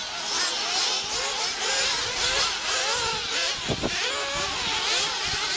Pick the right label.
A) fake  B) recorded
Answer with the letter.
B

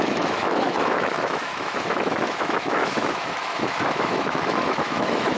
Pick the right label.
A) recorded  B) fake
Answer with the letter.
B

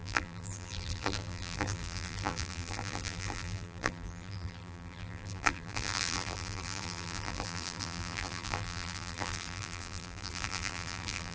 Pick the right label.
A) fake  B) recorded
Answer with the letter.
A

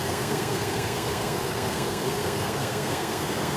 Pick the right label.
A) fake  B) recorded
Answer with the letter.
A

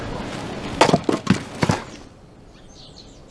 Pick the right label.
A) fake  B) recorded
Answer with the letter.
B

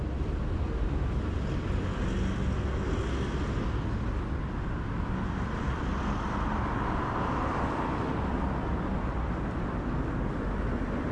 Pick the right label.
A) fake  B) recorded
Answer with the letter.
B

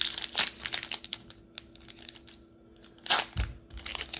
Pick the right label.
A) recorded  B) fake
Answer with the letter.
A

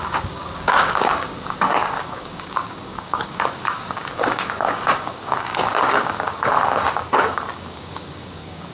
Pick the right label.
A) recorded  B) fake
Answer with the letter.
B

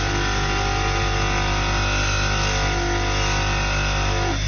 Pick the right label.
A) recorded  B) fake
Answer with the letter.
A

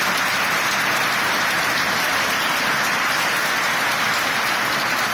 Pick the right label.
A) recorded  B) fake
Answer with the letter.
B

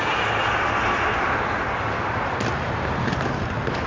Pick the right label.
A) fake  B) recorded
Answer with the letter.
B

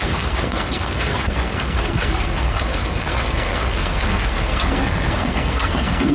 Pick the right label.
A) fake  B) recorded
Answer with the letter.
A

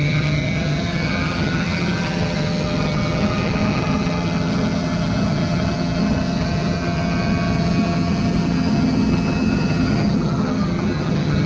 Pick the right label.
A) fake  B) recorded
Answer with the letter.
A